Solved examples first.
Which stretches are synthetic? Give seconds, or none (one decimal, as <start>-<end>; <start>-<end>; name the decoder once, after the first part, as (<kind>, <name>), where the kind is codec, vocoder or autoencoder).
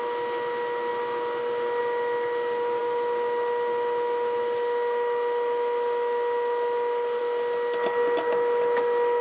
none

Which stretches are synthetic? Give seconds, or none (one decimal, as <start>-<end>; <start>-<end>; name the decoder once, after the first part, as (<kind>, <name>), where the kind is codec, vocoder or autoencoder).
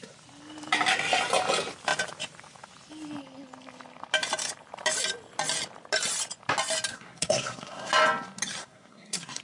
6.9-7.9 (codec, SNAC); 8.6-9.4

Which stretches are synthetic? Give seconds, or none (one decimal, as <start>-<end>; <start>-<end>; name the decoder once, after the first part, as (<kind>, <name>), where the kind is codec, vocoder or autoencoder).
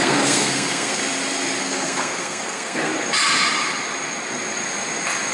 0.0-1.0 (codec, SNAC); 1.6-2.9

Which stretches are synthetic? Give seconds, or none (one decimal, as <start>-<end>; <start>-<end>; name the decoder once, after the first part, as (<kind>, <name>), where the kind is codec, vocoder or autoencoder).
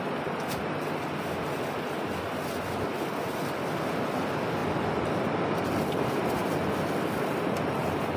none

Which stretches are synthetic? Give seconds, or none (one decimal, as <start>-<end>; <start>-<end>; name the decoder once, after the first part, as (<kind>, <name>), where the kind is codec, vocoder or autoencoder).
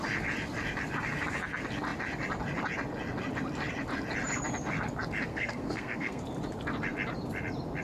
5.3-6.2 (codec, SNAC)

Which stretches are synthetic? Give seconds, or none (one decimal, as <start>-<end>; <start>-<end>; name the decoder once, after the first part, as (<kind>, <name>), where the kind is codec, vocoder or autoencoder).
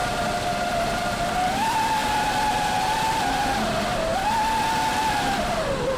none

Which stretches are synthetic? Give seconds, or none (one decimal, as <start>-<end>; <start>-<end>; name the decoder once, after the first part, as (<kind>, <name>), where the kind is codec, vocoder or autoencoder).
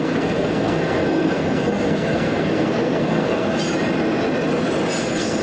0.0-3.5 (codec, SNAC); 5.0-5.4